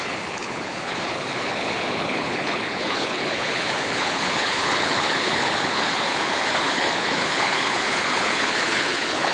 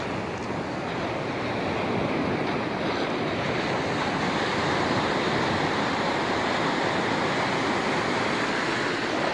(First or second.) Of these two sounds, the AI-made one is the first